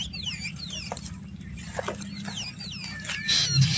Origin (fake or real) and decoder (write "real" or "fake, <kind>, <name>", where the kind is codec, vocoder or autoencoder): real